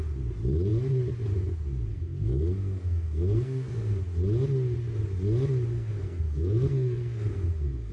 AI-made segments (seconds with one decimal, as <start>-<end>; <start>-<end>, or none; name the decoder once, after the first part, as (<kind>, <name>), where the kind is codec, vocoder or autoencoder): 1.9-4.0 (codec, SNAC); 5.7-7.9